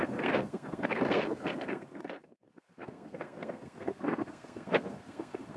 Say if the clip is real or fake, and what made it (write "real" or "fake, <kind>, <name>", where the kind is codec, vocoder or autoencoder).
fake, codec, SNAC